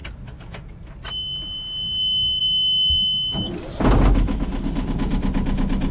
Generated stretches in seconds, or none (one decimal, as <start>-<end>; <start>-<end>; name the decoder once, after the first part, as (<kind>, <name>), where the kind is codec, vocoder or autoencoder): none